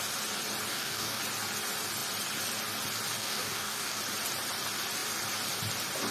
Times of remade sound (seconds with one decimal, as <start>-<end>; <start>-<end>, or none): 0.7-1.2; 3.2-4.0